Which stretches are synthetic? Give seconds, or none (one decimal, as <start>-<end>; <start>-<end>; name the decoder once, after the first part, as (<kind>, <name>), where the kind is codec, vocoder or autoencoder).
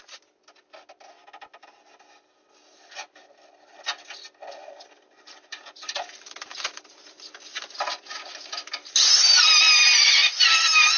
4.6-9.6 (vocoder, BigVGAN v2)